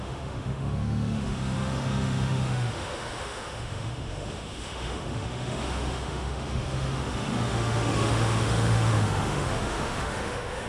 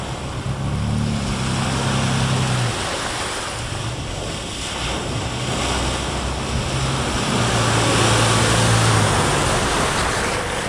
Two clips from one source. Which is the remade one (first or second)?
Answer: first